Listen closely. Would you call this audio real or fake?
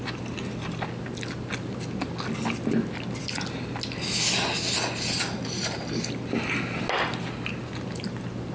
real